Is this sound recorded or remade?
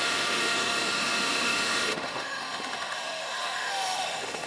remade